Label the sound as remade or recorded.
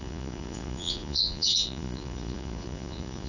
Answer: remade